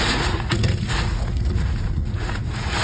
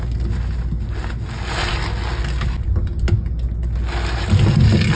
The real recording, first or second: second